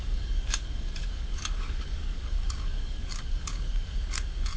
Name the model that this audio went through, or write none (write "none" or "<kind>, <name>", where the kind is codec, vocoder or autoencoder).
codec, DAC